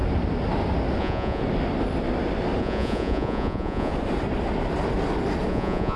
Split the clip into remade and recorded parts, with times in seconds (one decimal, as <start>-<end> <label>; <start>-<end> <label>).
0.0-1.0 recorded; 1.0-1.4 remade; 1.4-2.6 recorded; 2.6-3.9 remade; 3.9-5.5 recorded; 5.5-6.0 remade